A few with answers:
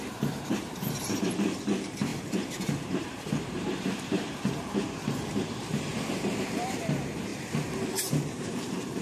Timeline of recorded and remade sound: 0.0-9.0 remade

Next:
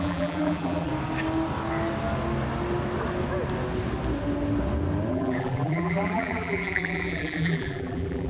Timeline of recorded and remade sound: 0.0-0.9 remade; 0.9-5.1 recorded; 5.1-8.3 remade